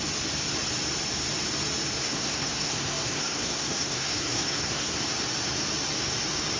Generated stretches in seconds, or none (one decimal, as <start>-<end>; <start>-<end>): 2.0-5.0